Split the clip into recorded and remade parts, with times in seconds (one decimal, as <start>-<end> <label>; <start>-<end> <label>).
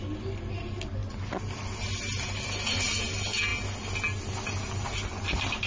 0.0-5.7 recorded